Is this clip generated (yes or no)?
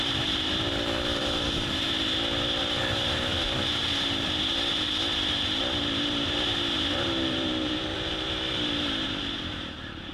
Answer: yes